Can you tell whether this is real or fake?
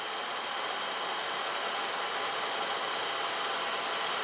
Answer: real